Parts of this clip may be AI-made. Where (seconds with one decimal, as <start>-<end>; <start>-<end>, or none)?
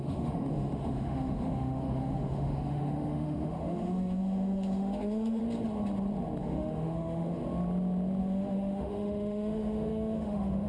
0.0-5.4; 6.4-7.4; 8.2-10.7